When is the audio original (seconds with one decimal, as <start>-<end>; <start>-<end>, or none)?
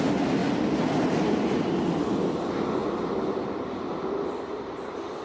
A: 0.0-2.8; 3.7-5.2